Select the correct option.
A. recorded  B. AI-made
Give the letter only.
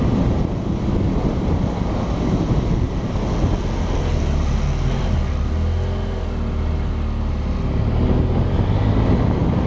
A